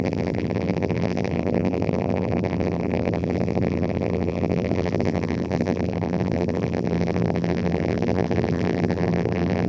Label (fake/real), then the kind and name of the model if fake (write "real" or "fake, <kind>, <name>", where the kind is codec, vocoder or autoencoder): fake, vocoder, BigVGAN v2